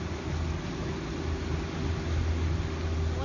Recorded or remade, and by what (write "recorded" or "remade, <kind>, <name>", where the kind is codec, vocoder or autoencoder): recorded